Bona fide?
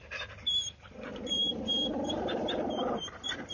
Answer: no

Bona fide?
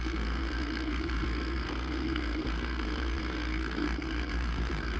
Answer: no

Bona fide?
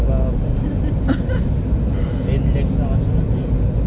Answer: yes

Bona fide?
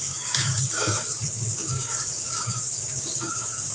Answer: no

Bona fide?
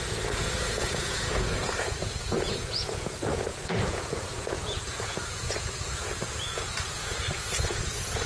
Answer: no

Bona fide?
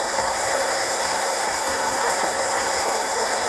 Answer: no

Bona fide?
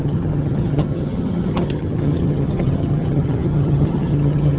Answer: no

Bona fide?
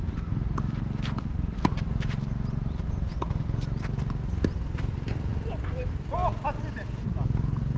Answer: yes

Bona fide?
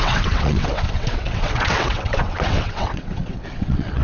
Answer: no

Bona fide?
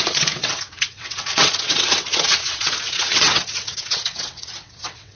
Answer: no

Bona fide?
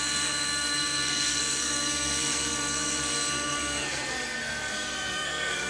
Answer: no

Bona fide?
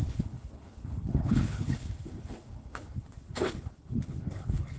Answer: no